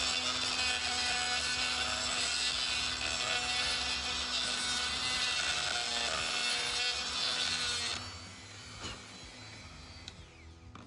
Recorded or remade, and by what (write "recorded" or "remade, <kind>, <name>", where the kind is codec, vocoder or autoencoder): recorded